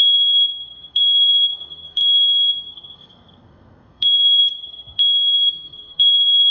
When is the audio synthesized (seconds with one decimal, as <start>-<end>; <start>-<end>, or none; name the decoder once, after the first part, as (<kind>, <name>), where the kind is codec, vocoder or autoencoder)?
0.0-6.5 (codec, SNAC)